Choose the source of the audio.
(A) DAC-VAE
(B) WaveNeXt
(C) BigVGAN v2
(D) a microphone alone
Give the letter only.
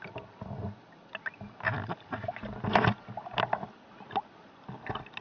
D